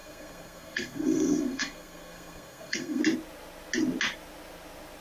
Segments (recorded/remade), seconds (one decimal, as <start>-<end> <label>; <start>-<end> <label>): 0.0-3.0 remade; 3.0-5.0 recorded